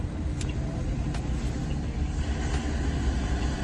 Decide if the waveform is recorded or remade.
recorded